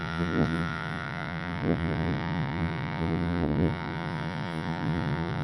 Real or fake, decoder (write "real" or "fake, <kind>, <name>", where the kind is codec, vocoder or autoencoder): fake, vocoder, Vocos